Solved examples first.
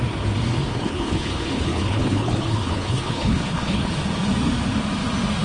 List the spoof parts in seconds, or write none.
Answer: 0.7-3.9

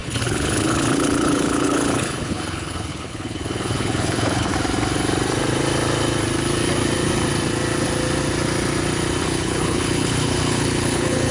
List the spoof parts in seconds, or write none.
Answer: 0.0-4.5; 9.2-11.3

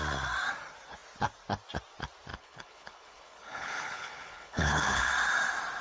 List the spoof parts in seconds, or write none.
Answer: 2.3-5.1

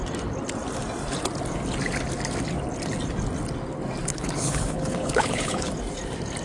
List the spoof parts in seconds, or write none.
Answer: 4.1-5.7

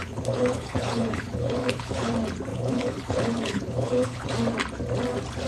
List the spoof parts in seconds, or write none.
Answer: 0.0-2.1; 2.5-4.3

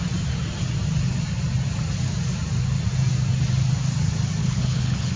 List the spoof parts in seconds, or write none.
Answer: 4.4-5.2

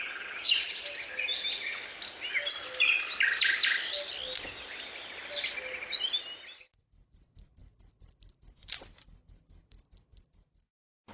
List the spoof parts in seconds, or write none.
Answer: none

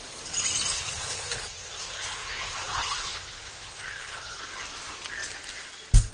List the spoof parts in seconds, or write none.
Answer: 0.7-4.4